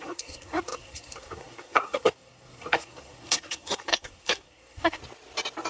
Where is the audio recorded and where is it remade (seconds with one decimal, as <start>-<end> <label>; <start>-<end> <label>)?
0.0-5.0 remade; 5.0-5.7 recorded